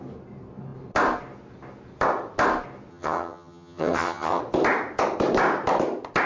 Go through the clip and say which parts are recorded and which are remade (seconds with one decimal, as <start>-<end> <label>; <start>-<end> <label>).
0.0-2.9 recorded; 2.9-4.4 remade; 4.4-6.3 recorded